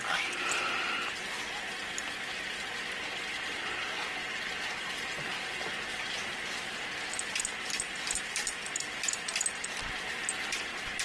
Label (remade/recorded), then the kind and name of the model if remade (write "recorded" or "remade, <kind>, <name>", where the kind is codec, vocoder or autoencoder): recorded